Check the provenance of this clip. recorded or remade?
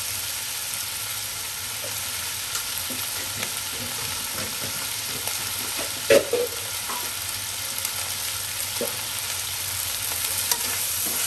recorded